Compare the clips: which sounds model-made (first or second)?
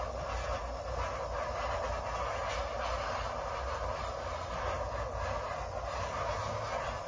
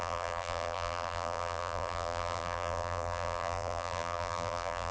second